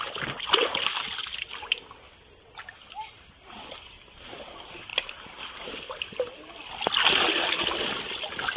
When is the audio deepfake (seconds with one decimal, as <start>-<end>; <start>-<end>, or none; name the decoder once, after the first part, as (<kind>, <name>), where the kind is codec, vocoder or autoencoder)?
none